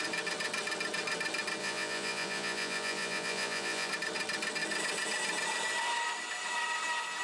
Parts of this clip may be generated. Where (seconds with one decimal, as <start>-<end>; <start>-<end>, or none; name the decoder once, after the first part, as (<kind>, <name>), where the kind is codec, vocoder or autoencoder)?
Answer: 1.6-3.9 (vocoder, Vocos)